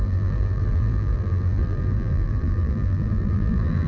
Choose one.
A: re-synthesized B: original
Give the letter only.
A